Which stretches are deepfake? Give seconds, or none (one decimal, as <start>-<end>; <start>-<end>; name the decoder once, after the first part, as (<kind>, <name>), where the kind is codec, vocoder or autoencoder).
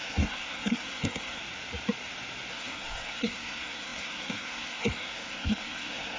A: 0.0-1.4 (codec, SNAC); 2.5-6.2